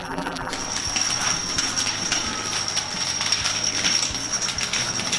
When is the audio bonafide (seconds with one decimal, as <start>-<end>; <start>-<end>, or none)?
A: 0.5-5.2